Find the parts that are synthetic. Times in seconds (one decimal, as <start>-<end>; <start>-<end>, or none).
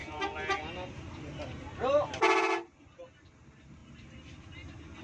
none